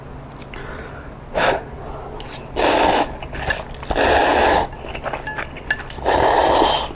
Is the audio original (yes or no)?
yes